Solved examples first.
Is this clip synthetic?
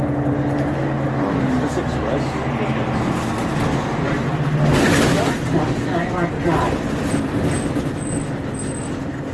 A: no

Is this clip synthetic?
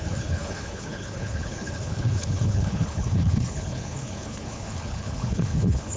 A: yes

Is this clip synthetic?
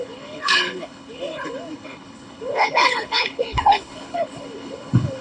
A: yes